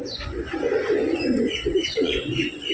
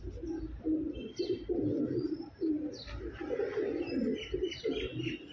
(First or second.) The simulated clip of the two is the first